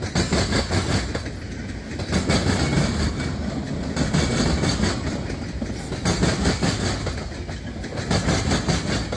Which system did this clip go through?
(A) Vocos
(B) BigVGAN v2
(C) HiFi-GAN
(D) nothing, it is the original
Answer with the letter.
D